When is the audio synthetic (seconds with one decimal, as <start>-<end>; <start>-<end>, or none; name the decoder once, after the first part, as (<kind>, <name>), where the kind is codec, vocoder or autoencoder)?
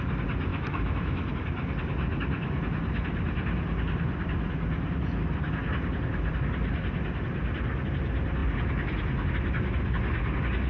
0.5-1.3 (autoencoder, DAC-VAE)